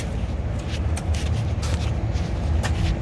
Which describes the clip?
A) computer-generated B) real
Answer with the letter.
B